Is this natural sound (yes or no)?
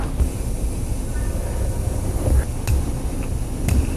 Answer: yes